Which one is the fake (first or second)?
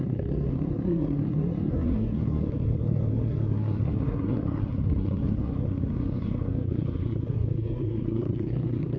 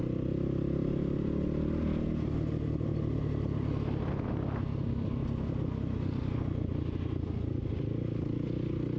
first